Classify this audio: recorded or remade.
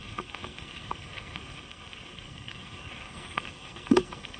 remade